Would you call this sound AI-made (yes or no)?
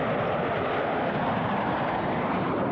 no